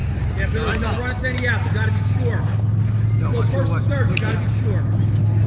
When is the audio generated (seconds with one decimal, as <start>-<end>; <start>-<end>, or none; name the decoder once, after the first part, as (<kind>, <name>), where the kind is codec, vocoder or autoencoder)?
none